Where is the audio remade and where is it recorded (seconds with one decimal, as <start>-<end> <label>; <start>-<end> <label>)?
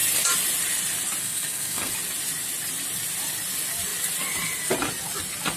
0.0-1.2 recorded; 1.2-1.9 remade; 1.9-5.6 recorded